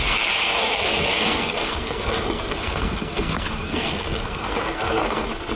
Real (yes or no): no